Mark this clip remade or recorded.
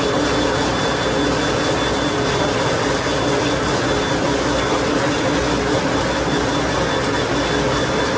recorded